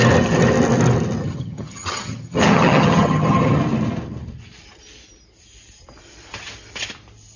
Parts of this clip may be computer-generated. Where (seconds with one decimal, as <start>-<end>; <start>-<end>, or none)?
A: 1.2-3.6

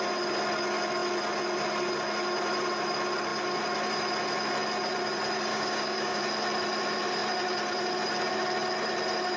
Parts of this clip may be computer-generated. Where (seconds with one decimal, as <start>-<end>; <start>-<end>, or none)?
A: 5.5-6.2

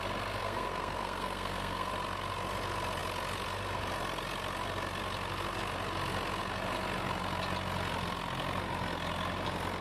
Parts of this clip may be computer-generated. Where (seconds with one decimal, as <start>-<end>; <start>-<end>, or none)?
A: 0.4-1.9

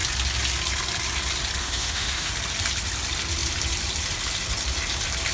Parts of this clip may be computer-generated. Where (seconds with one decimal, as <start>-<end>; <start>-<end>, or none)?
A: 1.6-2.3